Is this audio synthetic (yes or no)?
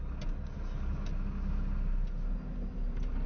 no